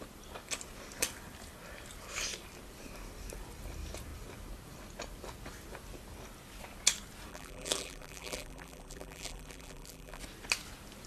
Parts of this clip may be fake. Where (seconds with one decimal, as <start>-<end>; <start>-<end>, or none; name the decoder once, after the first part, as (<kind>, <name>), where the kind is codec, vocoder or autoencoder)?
7.3-10.2 (vocoder, BigVGAN v2)

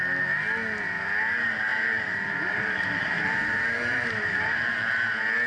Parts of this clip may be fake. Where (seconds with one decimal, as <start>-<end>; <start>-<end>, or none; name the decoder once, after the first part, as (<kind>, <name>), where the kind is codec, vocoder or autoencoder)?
1.7-5.0 (vocoder, BigVGAN v2)